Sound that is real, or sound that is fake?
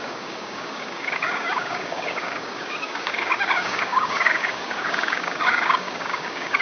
fake